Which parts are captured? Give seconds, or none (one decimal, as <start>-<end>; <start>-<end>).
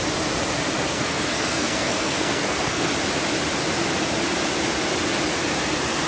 0.0-0.9; 2.9-6.1